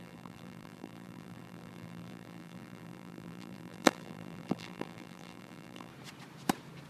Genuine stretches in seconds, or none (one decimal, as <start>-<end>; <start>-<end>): 5.9-6.9